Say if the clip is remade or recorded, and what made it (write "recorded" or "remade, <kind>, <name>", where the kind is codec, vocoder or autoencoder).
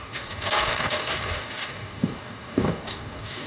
remade, codec, DAC